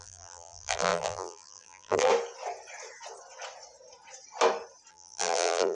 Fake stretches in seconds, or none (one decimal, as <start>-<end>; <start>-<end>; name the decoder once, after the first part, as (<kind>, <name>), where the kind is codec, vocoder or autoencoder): 0.0-2.1 (vocoder, BigVGAN v2); 4.9-5.7